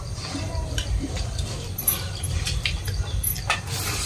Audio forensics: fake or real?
fake